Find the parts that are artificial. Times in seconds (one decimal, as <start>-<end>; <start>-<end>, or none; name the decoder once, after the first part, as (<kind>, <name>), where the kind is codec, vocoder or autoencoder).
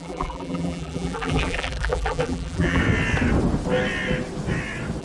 0.0-2.8 (vocoder, BigVGAN v2)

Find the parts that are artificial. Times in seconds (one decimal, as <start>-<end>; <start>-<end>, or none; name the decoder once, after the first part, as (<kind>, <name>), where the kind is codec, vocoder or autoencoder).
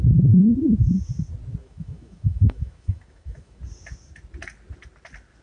1.6-3.6 (autoencoder, DAC-VAE)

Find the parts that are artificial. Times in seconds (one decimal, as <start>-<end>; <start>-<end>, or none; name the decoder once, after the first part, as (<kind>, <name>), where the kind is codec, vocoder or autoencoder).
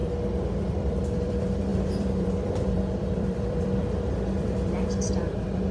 0.7-5.7 (vocoder, BigVGAN v2)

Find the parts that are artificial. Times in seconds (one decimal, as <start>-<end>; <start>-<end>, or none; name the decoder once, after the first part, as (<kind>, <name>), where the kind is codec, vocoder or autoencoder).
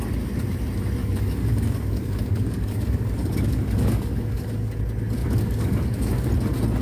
1.0-4.8 (codec, DAC); 5.2-6.3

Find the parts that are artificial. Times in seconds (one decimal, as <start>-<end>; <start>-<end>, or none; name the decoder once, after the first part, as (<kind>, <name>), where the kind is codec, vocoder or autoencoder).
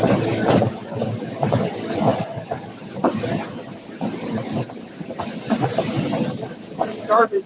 0.0-2.1 (vocoder, BigVGAN v2); 2.9-7.5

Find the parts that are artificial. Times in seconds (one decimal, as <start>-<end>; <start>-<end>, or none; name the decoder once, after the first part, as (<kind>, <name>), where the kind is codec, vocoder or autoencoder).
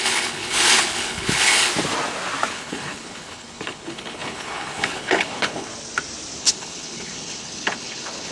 0.0-1.7 (codec, HILCodec); 2.5-5.7; 6.4-8.3